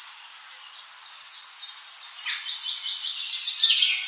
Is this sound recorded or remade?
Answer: recorded